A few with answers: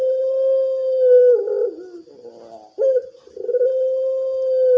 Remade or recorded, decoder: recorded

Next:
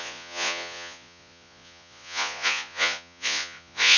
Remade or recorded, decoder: remade, vocoder, Vocos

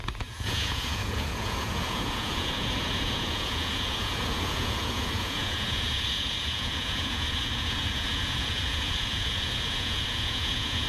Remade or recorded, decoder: remade, vocoder, Vocos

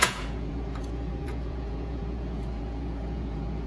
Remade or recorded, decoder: remade, vocoder, Vocos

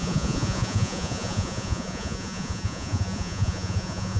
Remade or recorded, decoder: remade, vocoder, Vocos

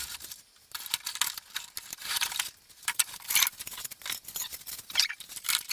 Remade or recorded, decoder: recorded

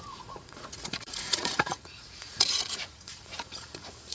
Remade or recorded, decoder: remade, vocoder, Vocos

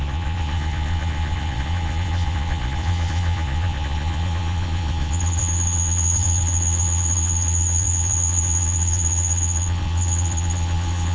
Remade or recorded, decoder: remade, vocoder, Vocos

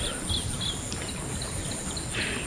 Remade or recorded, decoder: recorded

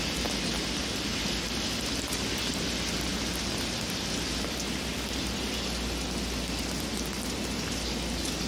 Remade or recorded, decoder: recorded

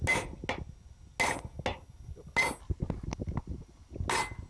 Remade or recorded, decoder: recorded